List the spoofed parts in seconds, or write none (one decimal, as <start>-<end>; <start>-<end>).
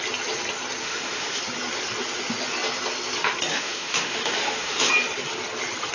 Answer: 0.8-1.4; 3.5-4.9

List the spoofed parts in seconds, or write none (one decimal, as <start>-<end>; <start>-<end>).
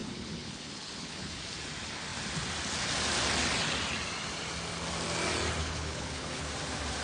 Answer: 0.0-1.4; 5.6-6.5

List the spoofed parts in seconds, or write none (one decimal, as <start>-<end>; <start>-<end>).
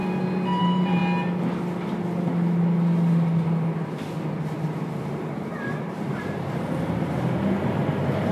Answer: 0.6-1.0; 5.0-8.3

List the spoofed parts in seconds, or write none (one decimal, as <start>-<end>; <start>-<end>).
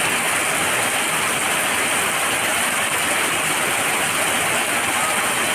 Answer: none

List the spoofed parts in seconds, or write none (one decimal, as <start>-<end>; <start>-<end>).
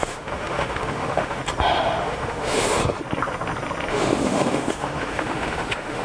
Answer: 0.0-1.4; 2.0-2.8; 3.9-6.0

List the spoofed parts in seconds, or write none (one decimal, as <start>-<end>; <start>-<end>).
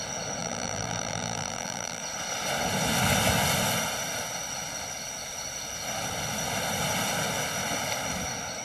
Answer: 0.4-2.0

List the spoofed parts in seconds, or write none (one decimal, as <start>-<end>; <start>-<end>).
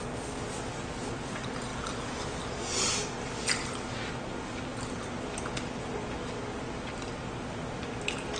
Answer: none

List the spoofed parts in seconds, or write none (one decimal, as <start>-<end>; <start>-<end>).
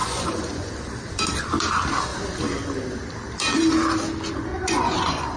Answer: 0.0-0.7; 4.5-5.4